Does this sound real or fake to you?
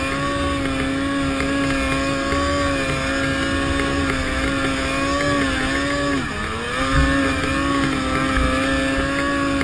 real